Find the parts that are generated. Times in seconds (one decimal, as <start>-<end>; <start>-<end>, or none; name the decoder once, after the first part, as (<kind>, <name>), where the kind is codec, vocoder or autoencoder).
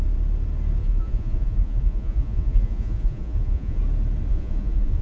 0.8-3.8 (vocoder, Vocos); 4.3-5.0